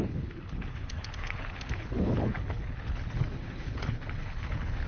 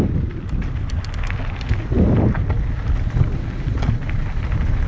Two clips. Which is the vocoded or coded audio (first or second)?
first